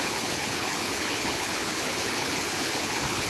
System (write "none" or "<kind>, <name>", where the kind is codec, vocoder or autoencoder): codec, HILCodec